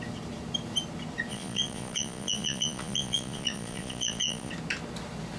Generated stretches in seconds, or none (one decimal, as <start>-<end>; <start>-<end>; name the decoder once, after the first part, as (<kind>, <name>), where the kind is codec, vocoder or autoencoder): 1.3-4.5 (vocoder, Vocos)